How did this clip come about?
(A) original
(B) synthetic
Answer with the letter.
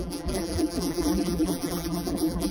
B